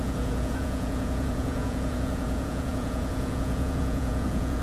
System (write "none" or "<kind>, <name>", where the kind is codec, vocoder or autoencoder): vocoder, Vocos